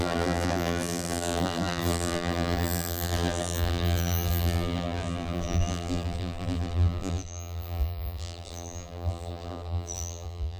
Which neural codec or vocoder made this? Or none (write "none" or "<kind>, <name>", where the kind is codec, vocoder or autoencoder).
vocoder, BigVGAN v2